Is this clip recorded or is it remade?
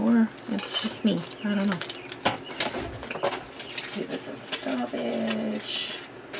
recorded